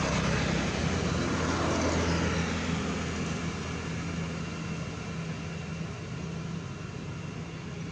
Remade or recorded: recorded